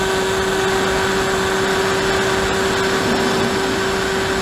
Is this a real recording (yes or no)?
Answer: yes